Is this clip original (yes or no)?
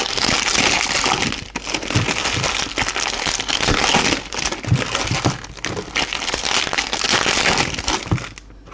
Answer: yes